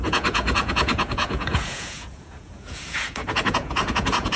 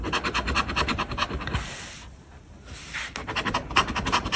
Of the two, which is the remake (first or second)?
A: first